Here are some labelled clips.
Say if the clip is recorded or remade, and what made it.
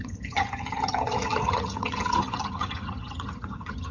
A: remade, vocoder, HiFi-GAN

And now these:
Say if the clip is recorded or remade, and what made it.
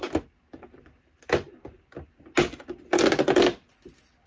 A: recorded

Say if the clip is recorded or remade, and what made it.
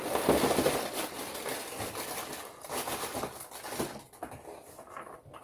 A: recorded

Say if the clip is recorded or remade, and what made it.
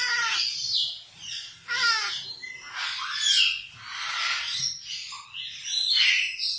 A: recorded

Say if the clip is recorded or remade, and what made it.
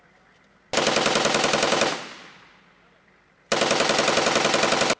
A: recorded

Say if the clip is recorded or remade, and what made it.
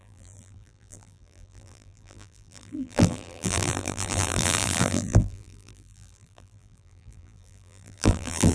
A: remade, vocoder, BigVGAN v2